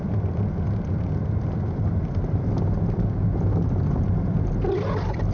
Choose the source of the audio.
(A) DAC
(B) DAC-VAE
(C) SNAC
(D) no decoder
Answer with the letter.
D